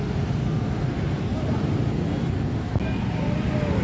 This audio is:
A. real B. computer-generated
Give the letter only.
A